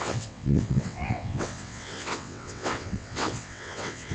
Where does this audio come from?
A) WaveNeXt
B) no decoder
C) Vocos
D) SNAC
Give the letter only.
A